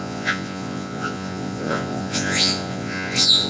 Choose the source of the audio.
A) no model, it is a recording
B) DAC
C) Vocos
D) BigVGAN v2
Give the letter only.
C